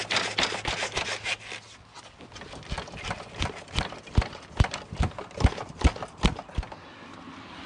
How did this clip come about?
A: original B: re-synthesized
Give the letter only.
A